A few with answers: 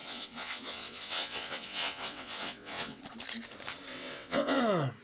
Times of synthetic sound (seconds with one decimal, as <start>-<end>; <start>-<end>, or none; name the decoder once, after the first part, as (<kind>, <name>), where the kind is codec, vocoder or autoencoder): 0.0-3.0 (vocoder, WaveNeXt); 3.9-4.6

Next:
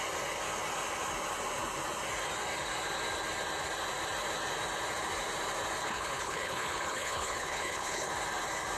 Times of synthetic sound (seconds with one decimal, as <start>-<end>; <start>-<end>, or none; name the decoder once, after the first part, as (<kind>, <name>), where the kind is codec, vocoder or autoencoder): 5.8-8.1 (codec, HILCodec)

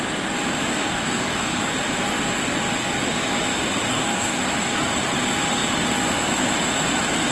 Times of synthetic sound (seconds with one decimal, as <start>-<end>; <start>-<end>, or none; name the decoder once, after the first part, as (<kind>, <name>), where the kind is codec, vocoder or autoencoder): 0.7-1.6 (codec, DAC); 3.9-4.4

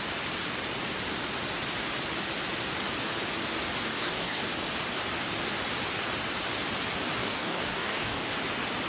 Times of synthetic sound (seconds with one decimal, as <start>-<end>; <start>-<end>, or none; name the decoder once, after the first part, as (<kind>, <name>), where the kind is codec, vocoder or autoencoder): 3.9-4.4 (codec, DAC); 7.2-8.3

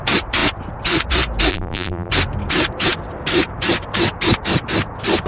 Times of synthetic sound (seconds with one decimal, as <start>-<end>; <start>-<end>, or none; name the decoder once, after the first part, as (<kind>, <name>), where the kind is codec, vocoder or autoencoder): 1.5-2.1 (vocoder, BigVGAN v2)